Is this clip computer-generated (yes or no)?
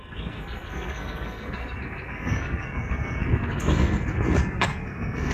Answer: yes